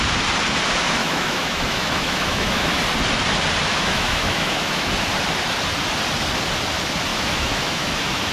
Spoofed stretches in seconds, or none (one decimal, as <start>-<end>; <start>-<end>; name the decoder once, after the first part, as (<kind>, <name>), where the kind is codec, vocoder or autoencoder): 1.0-2.8 (autoencoder, DAC-VAE); 3.7-4.9; 7.1-8.3